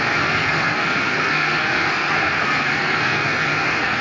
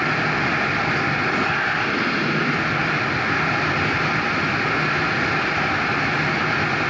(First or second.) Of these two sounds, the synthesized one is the first